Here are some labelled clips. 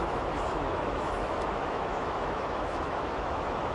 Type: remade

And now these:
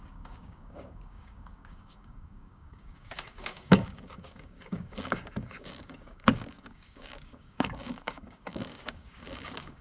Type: remade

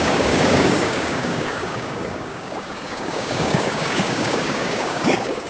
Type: remade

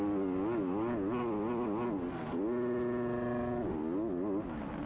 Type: recorded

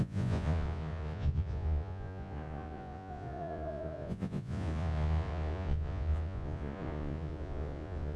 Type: remade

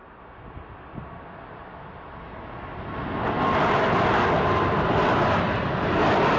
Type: recorded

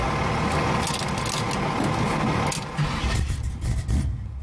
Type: recorded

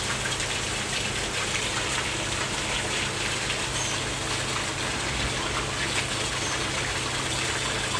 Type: recorded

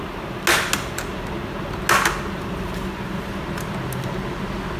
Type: recorded